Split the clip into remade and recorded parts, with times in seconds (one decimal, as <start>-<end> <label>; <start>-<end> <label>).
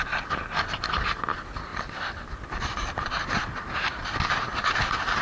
0.0-1.7 recorded; 1.7-2.3 remade; 2.3-3.9 recorded; 3.9-4.6 remade; 4.6-5.2 recorded